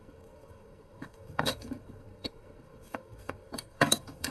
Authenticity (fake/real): fake